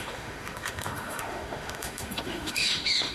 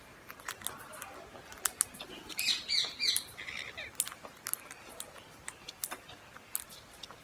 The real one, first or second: second